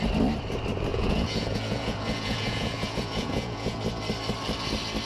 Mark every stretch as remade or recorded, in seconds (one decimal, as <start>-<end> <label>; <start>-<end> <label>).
0.0-0.9 recorded; 0.9-3.8 remade; 3.8-5.1 recorded